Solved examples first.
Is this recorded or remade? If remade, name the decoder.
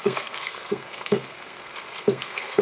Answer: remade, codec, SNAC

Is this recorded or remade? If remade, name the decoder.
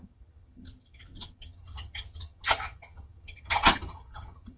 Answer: remade, vocoder, HiFi-GAN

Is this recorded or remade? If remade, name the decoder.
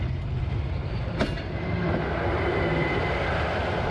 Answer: recorded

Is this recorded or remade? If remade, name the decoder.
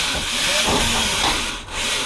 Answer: recorded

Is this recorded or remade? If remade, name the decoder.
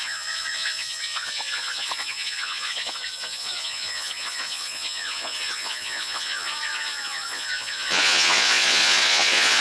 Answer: remade, vocoder, Vocos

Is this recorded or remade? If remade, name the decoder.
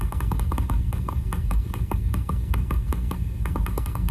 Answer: remade, codec, SNAC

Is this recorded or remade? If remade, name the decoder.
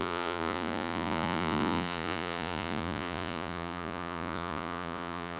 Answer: remade, vocoder, Vocos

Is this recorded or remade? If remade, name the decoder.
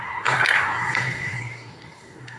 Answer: remade, codec, SNAC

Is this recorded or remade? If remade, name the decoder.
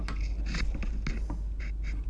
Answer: recorded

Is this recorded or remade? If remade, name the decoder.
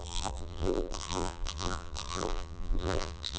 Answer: remade, vocoder, BigVGAN v2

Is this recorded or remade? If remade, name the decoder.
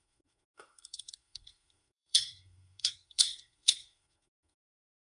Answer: remade, codec, SNAC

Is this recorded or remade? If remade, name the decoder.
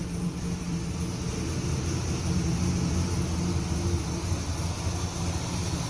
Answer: recorded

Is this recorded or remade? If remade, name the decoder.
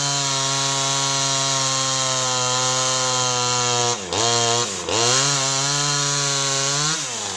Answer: recorded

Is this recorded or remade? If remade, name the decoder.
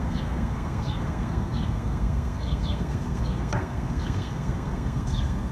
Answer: remade, codec, SNAC